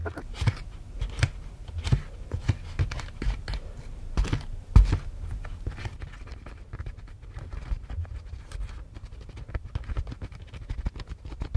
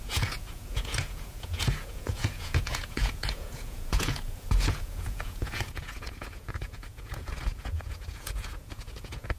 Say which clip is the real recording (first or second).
first